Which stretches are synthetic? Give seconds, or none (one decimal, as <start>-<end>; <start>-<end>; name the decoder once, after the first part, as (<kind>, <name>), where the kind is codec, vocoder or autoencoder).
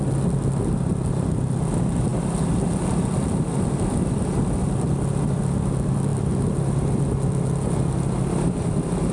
none